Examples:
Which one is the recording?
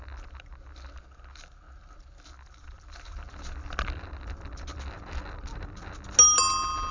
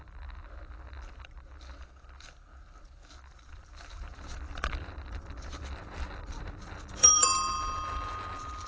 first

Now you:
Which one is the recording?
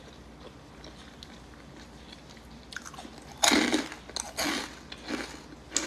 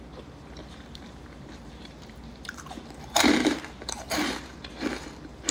first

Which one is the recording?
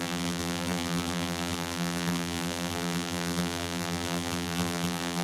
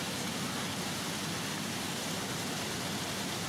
second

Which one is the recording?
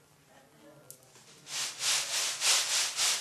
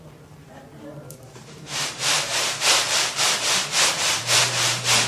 first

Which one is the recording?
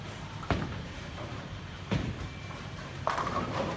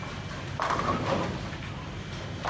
second